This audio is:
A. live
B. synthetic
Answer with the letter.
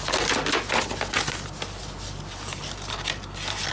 A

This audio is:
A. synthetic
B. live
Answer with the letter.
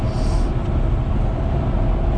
B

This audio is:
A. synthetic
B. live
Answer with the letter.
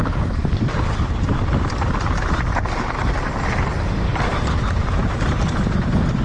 A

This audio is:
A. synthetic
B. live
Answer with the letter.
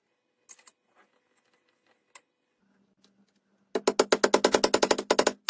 B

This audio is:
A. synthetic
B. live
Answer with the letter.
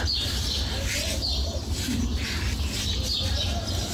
B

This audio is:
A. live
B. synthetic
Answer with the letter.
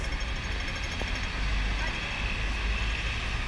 A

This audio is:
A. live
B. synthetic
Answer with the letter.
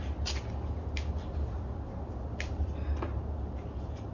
A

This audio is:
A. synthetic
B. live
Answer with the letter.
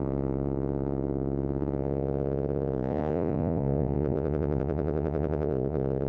A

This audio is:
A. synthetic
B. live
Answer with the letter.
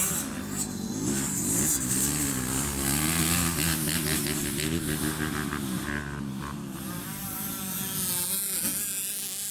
B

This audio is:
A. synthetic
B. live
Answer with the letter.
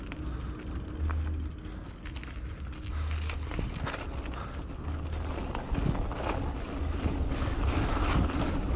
B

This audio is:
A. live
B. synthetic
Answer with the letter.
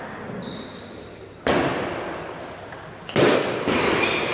A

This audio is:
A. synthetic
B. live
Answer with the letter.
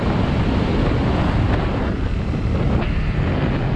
B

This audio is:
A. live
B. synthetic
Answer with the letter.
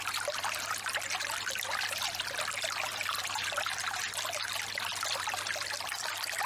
A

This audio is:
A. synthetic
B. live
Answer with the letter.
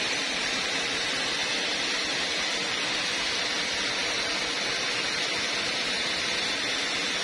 B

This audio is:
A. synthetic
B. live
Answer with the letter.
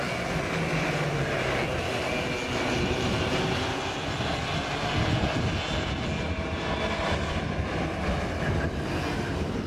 B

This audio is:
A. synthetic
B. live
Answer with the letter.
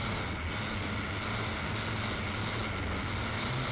B